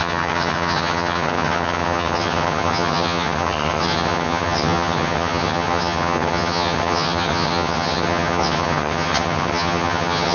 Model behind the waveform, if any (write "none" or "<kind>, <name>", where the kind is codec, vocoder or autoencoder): vocoder, HiFi-GAN